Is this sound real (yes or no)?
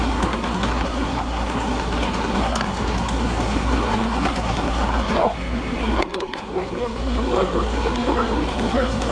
no